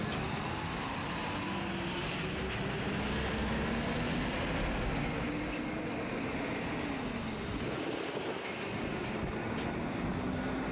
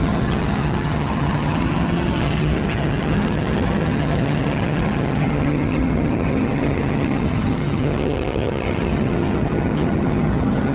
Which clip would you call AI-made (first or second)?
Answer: second